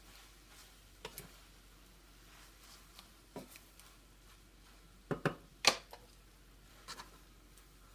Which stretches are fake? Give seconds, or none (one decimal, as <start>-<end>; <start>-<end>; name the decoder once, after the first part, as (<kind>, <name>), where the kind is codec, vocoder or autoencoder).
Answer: none